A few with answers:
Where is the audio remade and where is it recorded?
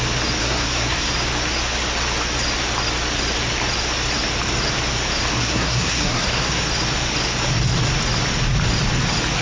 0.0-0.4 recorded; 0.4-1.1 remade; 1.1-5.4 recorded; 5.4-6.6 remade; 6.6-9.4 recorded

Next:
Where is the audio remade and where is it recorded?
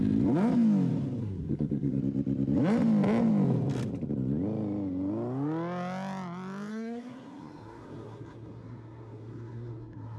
0.0-1.2 recorded; 1.2-2.0 remade; 2.0-6.7 recorded; 6.7-10.2 remade